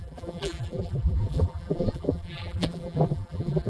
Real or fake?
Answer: fake